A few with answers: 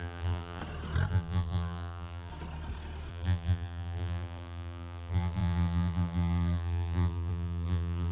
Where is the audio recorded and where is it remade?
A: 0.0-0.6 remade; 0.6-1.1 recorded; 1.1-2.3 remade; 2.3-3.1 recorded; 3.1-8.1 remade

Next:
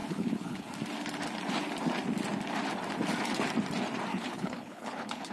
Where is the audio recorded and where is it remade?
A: 0.0-0.7 remade; 0.7-4.1 recorded; 4.1-5.3 remade

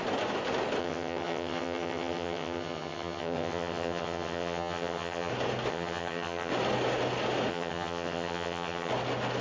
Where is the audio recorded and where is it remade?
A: 0.0-0.8 recorded; 0.8-5.3 remade; 5.3-5.7 recorded; 5.7-6.5 remade; 6.5-7.5 recorded; 7.5-8.9 remade; 8.9-9.4 recorded

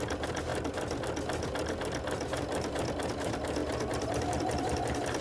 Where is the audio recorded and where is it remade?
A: 0.0-0.5 remade; 0.5-3.1 recorded; 3.1-5.2 remade

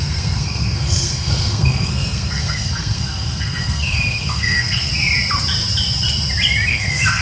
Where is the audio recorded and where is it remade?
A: 0.0-4.9 remade; 4.9-6.7 recorded; 6.7-7.2 remade

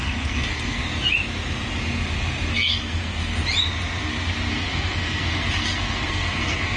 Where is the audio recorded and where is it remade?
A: 0.0-0.8 remade; 0.8-2.5 recorded; 2.5-3.4 remade; 3.4-4.5 recorded; 4.5-6.8 remade

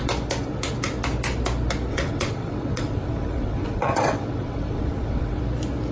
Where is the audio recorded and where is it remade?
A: 0.0-1.9 recorded; 1.9-5.4 remade; 5.4-5.9 recorded